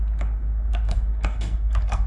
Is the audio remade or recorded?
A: remade